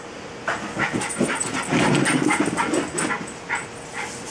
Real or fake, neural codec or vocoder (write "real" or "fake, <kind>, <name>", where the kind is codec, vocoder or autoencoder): real